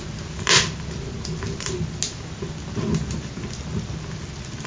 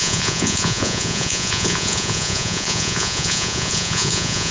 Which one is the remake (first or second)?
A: second